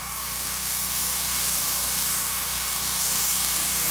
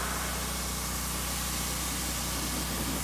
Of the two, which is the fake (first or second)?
first